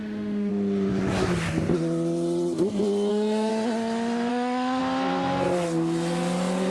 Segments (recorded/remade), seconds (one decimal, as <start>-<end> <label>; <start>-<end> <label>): 0.0-0.5 remade; 0.5-3.1 recorded; 3.1-3.5 remade; 3.5-4.3 recorded; 4.3-4.8 remade; 4.8-6.7 recorded